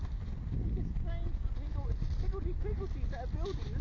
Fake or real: real